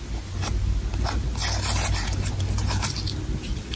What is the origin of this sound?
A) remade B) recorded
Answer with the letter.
B